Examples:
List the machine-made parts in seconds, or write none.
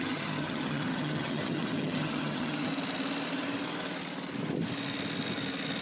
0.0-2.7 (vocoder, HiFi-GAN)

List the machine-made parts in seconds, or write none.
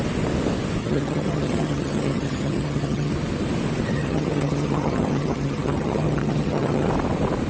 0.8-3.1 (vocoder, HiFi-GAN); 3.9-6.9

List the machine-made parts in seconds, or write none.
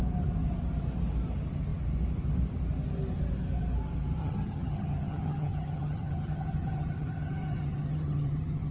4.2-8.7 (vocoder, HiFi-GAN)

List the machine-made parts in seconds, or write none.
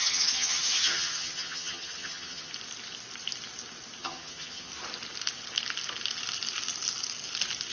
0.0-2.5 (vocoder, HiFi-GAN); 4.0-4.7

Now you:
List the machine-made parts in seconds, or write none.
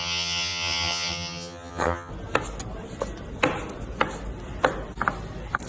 0.0-2.1 (vocoder, HiFi-GAN)